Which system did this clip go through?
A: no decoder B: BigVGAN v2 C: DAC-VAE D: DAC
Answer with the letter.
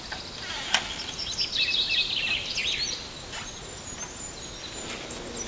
A